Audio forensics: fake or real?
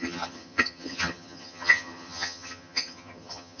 fake